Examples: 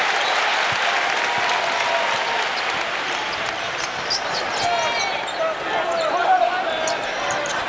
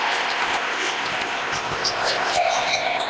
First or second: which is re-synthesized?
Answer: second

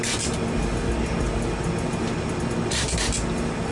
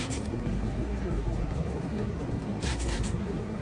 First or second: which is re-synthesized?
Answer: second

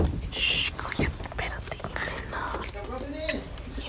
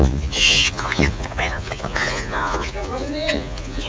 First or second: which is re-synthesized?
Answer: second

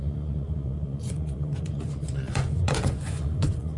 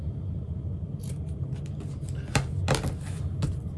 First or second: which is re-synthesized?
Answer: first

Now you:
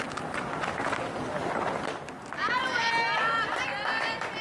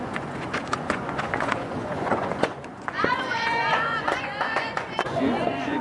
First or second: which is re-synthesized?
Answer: second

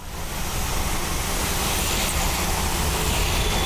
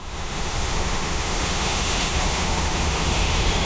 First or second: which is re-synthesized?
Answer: second